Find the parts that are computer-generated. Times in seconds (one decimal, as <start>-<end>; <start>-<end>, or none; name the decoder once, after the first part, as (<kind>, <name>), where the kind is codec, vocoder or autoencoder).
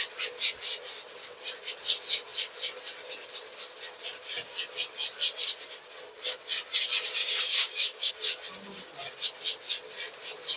7.2-8.1 (codec, DAC)